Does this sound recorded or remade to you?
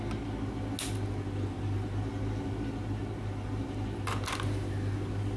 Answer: recorded